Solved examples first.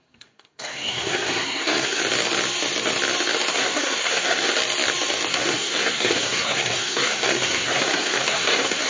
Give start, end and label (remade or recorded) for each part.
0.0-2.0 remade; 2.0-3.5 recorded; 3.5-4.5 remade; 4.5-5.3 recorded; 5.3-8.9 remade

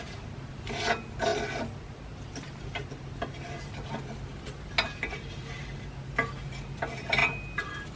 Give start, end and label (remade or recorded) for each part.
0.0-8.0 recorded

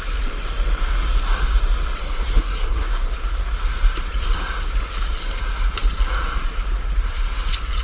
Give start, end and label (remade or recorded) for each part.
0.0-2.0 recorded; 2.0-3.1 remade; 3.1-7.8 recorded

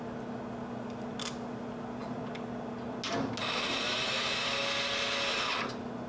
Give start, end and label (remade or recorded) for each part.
0.0-6.1 recorded

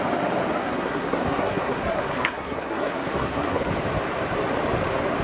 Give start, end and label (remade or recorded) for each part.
0.0-0.6 recorded; 0.6-3.7 remade; 3.7-5.2 recorded

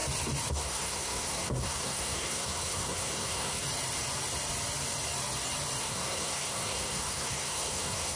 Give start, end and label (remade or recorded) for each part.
0.0-0.5 recorded; 0.5-3.6 remade; 3.6-5.8 recorded; 5.8-8.2 remade